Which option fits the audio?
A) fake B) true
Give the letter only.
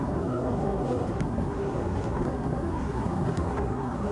A